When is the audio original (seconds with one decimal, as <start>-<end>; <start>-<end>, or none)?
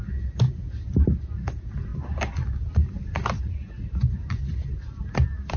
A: 0.0-1.9